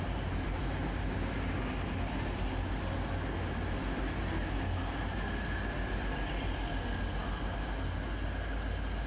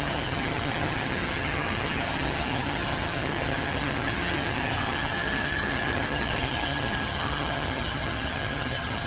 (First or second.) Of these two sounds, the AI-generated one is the second